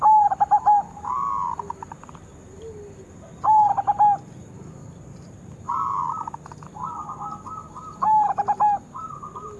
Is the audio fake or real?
real